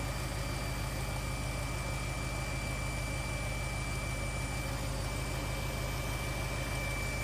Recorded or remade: recorded